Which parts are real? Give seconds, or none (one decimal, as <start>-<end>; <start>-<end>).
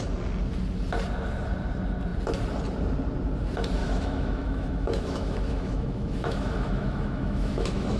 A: 0.0-3.8